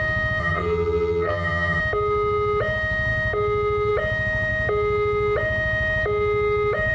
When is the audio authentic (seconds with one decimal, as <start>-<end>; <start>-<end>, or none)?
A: 0.0-0.4; 1.8-6.9